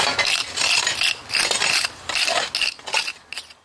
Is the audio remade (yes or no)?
no